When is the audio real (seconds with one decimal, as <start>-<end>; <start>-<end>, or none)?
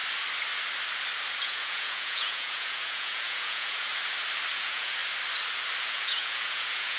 0.0-1.4; 3.9-4.5; 5.0-5.8